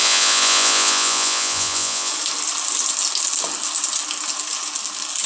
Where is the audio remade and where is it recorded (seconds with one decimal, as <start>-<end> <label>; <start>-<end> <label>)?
0.0-2.1 remade; 2.1-5.3 recorded